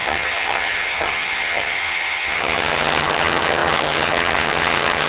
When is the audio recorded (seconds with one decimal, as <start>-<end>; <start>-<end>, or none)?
none